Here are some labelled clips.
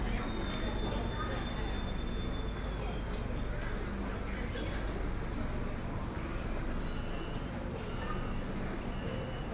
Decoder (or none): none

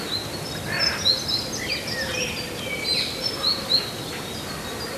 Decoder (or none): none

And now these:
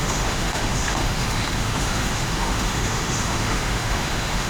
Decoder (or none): autoencoder, DAC-VAE